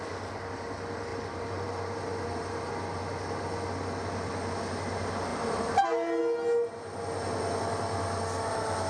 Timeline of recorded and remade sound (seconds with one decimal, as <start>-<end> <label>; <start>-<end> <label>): 0.0-1.1 recorded; 1.1-2.7 remade; 2.7-5.3 recorded; 5.3-6.2 remade; 6.2-8.9 recorded